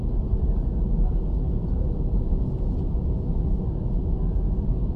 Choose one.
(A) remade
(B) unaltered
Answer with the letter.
B